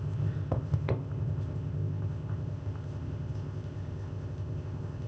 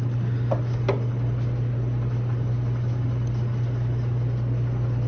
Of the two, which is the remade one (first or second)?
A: first